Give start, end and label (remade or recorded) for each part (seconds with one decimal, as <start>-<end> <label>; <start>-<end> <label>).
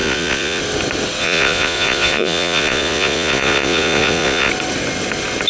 0.0-0.6 remade; 0.6-1.2 recorded; 1.2-4.5 remade; 4.5-5.5 recorded